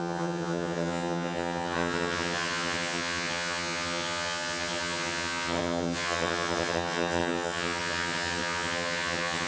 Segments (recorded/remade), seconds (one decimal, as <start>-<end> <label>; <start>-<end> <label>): 0.0-9.5 remade